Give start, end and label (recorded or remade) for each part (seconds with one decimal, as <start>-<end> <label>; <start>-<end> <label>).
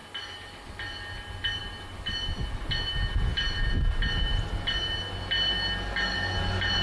0.0-6.8 recorded